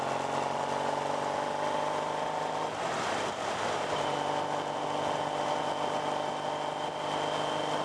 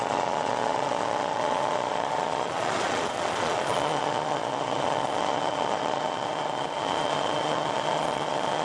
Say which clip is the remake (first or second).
second